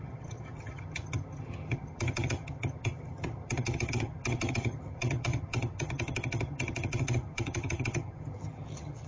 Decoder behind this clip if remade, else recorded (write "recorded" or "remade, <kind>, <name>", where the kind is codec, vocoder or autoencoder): remade, vocoder, HiFi-GAN